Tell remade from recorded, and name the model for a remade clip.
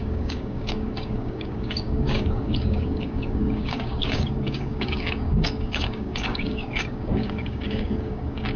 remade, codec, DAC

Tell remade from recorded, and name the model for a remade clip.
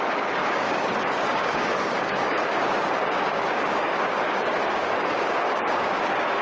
remade, codec, DAC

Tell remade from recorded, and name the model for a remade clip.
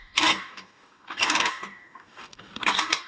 remade, codec, DAC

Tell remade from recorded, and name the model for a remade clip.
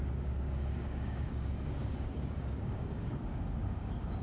remade, codec, DAC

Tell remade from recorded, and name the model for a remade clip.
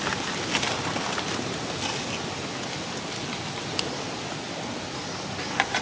recorded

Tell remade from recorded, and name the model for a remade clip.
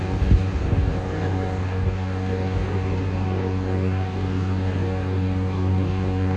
remade, codec, DAC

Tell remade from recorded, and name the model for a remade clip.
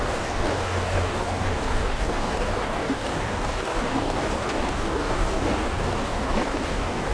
remade, codec, DAC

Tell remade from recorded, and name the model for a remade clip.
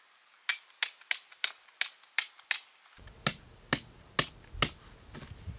recorded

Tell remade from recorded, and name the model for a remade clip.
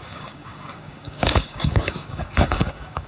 remade, codec, DAC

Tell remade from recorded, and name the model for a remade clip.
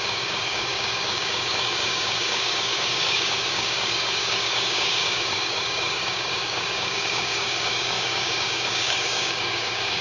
remade, codec, DAC